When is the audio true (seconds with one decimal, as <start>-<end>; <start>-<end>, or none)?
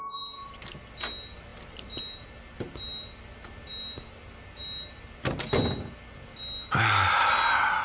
0.0-7.8